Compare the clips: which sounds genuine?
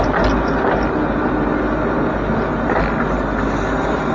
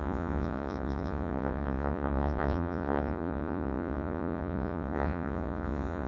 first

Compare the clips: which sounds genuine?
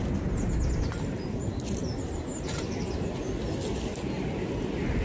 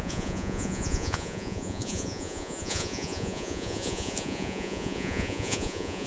first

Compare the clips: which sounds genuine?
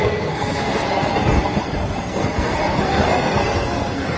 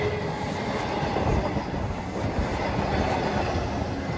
second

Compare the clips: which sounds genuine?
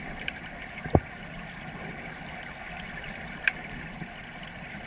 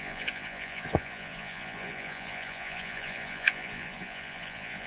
first